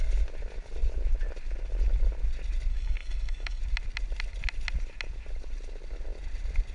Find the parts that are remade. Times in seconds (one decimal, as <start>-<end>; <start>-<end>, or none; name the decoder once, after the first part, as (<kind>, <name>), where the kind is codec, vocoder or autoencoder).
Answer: 2.7-3.6 (codec, DAC)